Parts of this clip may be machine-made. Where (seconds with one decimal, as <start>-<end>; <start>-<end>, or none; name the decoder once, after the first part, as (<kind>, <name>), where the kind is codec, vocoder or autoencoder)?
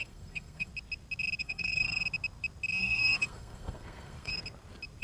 0.0-0.7 (codec, SNAC); 1.4-2.0; 2.8-4.3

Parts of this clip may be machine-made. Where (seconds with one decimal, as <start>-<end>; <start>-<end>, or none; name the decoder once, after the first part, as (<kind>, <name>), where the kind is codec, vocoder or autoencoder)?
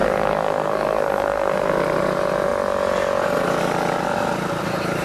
0.0-1.7 (codec, SNAC)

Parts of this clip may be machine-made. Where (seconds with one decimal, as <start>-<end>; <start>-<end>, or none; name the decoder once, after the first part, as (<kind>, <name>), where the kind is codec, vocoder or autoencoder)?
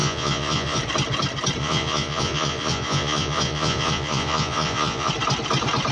0.0-0.8 (vocoder, Vocos); 1.6-5.1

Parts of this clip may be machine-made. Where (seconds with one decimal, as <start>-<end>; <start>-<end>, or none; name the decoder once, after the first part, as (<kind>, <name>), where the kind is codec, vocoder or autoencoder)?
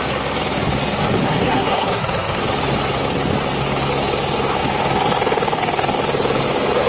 1.2-2.4 (codec, SNAC)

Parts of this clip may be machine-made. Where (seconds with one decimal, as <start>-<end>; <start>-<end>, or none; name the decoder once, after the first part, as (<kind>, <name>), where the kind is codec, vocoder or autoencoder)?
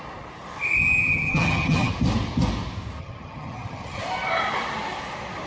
0.8-1.9 (vocoder, HiFi-GAN); 3.0-4.0